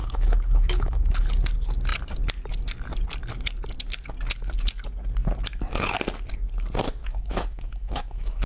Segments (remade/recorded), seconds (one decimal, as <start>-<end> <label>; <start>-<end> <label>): 0.0-1.2 remade; 1.2-7.0 recorded; 7.0-8.5 remade